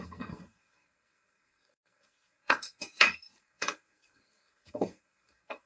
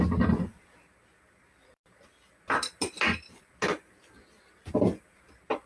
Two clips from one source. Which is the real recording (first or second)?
second